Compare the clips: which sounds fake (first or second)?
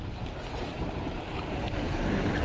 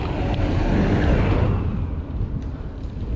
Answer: first